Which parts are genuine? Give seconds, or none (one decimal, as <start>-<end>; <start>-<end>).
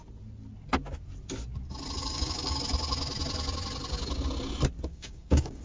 0.0-2.0; 2.6-4.9